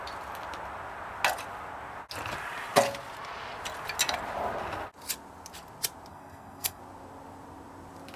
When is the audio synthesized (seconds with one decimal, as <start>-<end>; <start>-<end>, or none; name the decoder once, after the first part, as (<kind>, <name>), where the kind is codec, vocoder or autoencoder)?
6.1-6.8 (codec, SNAC)